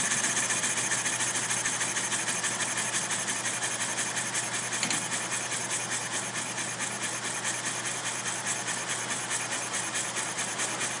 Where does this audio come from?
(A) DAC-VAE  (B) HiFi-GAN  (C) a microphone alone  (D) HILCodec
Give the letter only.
C